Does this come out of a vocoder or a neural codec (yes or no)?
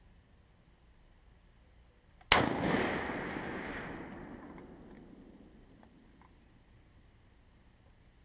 no